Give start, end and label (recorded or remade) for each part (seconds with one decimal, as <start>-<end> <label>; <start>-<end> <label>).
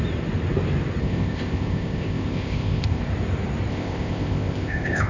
0.0-1.0 recorded; 1.0-3.0 remade; 3.0-3.7 recorded; 3.7-5.1 remade